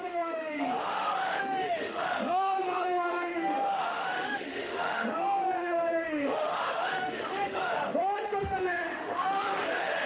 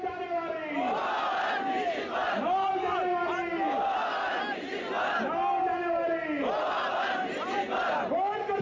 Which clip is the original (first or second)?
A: second